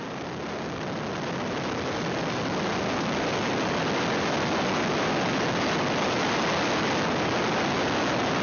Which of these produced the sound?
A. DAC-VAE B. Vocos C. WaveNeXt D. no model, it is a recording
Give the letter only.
D